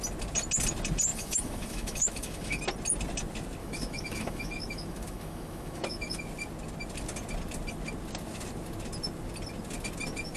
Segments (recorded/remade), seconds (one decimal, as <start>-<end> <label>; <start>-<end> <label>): 0.0-1.1 recorded; 1.1-2.6 remade; 2.6-3.6 recorded; 3.6-6.2 remade; 6.2-10.4 recorded